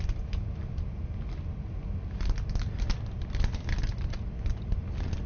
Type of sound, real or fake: real